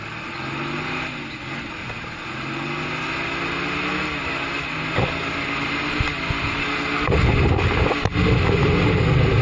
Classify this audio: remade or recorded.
recorded